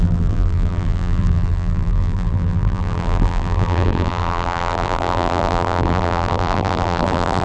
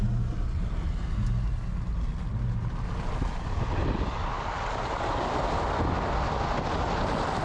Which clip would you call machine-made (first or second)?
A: first